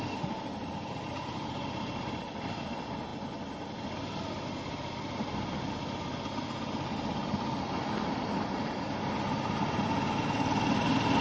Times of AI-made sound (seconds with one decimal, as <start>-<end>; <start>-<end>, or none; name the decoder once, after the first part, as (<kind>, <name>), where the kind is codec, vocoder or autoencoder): none